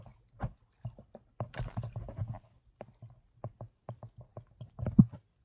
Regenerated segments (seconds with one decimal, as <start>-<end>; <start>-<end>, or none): 0.6-3.8